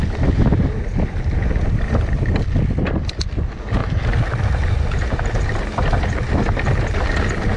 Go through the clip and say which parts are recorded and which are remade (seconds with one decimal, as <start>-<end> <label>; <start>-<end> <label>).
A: 0.0-7.6 recorded